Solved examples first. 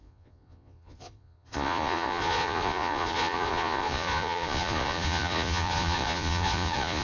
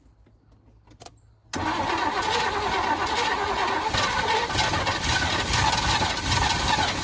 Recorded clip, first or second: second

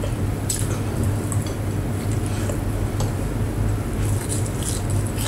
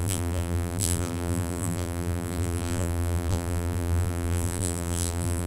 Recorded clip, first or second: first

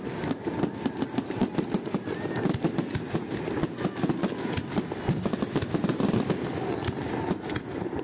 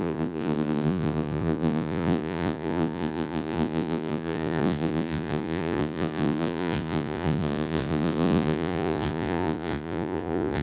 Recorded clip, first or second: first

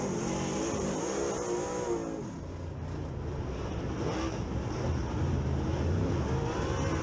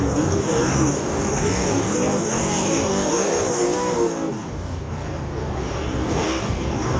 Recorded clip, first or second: first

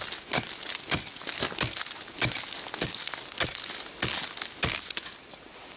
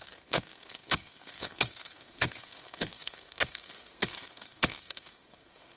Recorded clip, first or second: first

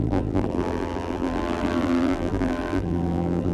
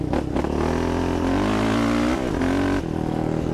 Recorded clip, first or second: second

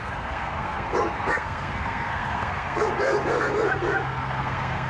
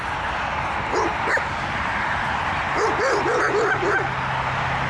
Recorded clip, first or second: second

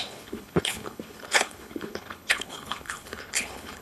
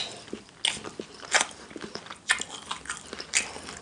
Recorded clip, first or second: second